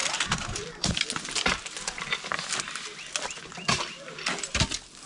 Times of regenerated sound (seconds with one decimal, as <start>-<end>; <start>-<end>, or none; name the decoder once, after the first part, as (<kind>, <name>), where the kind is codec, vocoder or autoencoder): 0.0-0.9 (vocoder, BigVGAN v2)